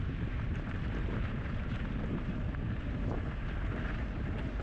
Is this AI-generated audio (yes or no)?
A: yes